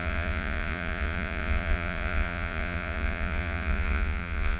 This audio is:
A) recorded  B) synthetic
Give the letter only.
B